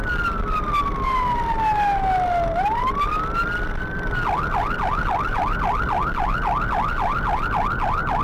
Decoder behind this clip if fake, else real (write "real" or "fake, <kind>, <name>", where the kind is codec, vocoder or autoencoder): real